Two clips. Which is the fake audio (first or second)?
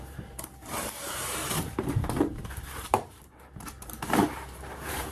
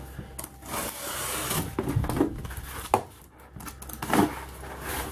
first